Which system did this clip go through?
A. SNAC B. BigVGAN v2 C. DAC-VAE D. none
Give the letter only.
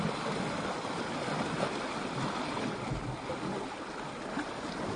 D